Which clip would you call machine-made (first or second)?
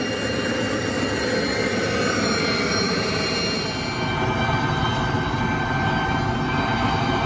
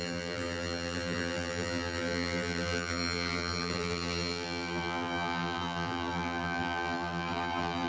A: second